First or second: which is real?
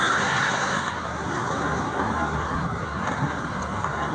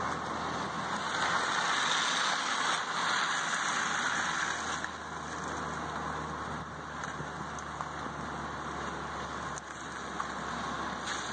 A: second